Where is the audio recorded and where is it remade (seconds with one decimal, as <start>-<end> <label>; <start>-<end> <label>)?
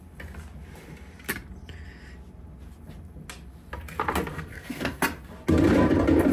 0.0-4.3 recorded; 4.3-5.0 remade; 5.0-6.3 recorded